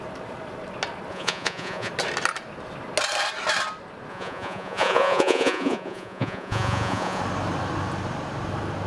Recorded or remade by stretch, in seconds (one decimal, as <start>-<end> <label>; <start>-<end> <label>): 0.0-1.1 recorded; 1.1-1.9 remade; 1.9-4.1 recorded; 4.1-7.2 remade; 7.2-8.9 recorded